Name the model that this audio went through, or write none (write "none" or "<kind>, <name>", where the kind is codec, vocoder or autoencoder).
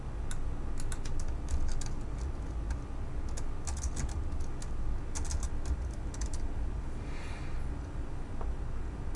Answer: none